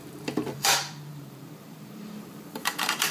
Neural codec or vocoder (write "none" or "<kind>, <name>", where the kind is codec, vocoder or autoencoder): vocoder, BigVGAN v2